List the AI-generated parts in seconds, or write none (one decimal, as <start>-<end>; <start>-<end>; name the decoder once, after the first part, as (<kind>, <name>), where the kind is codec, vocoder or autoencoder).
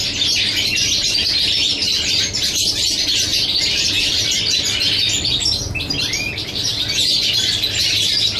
none